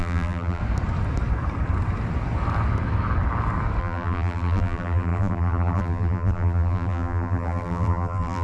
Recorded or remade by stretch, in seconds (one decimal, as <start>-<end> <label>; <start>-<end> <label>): 0.0-0.6 remade; 0.6-3.8 recorded; 3.8-8.4 remade

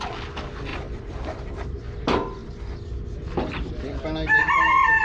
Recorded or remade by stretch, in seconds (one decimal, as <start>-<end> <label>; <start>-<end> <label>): 0.0-0.7 recorded; 0.7-1.8 remade; 1.8-5.0 recorded

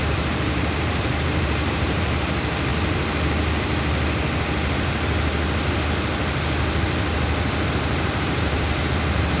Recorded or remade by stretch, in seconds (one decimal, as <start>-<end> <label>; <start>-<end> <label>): 0.0-2.7 remade; 2.7-7.6 recorded; 7.6-9.4 remade

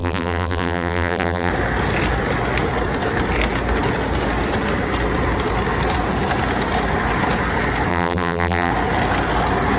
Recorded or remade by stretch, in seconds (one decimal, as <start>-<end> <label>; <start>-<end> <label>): 0.0-1.5 remade; 1.5-7.9 recorded; 7.9-8.7 remade; 8.7-9.8 recorded